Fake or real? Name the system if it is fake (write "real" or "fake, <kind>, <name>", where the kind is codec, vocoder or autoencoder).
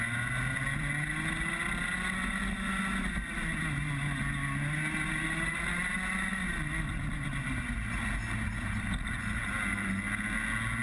real